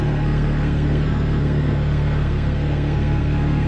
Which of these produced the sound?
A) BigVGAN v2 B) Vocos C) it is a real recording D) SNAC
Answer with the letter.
D